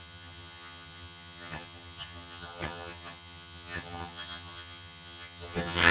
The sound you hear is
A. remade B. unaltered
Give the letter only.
A